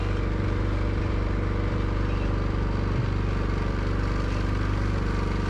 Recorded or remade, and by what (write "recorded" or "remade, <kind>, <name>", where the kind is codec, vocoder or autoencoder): recorded